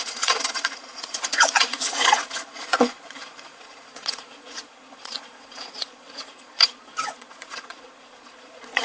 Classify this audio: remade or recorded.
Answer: remade